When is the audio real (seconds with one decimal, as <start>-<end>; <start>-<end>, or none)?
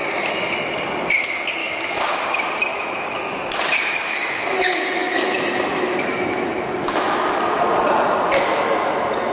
0.7-1.6; 2.2-2.7; 7.4-9.3